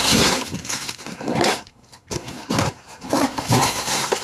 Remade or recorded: remade